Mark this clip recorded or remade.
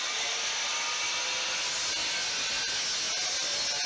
recorded